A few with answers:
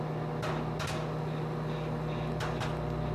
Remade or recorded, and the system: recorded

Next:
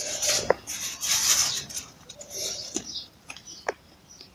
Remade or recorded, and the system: remade, vocoder, BigVGAN v2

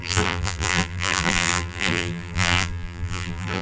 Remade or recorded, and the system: remade, vocoder, BigVGAN v2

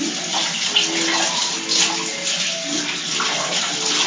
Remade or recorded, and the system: recorded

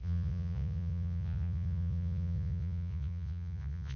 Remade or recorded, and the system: remade, vocoder, Vocos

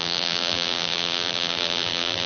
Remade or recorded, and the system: remade, vocoder, BigVGAN v2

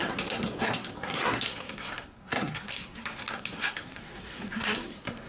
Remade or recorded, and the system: remade, codec, SNAC